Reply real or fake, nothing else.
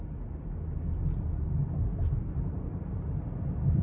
real